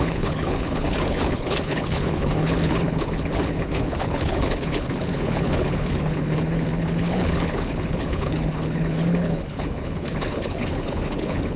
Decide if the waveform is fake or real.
fake